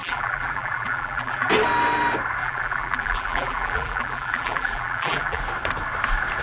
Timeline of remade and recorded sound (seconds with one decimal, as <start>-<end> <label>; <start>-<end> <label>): 0.0-1.5 remade; 1.5-2.4 recorded; 2.4-5.4 remade; 5.4-6.4 recorded